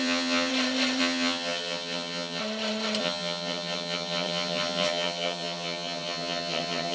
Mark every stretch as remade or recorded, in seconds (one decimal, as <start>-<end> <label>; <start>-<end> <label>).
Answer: 0.0-0.5 remade; 0.5-1.0 recorded; 1.0-2.4 remade; 2.4-3.0 recorded; 3.0-6.9 remade